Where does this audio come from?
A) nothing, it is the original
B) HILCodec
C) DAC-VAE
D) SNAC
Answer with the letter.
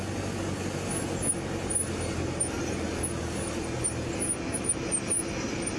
A